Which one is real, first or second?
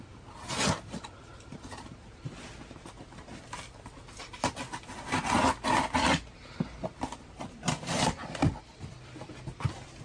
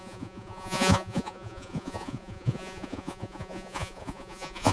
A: first